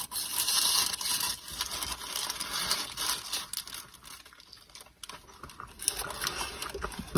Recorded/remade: recorded